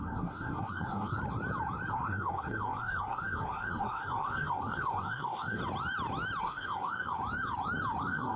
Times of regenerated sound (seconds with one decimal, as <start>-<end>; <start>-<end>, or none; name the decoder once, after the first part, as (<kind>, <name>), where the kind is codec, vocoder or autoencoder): 0.0-1.2 (codec, SNAC); 1.9-5.6; 6.4-7.2; 8.0-8.4